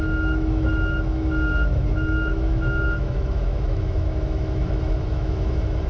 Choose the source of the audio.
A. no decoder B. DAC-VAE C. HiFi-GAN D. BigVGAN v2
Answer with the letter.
B